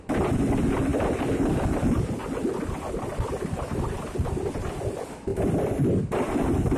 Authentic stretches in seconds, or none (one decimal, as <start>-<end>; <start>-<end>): 0.0-6.8